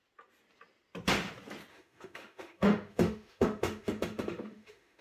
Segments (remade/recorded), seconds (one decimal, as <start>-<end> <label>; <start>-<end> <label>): 0.0-1.7 recorded; 1.7-5.0 remade